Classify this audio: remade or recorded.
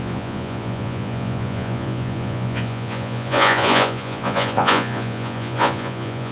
remade